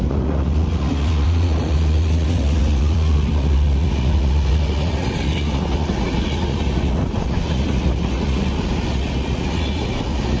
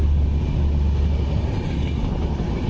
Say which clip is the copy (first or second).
first